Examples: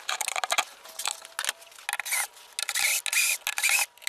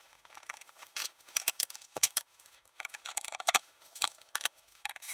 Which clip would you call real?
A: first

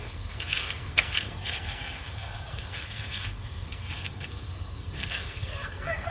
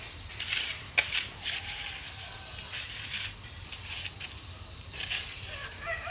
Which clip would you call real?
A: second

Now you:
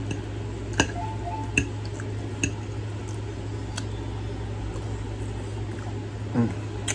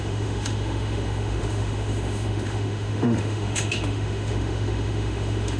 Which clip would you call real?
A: first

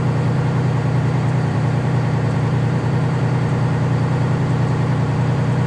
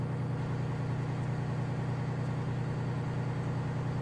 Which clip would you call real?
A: second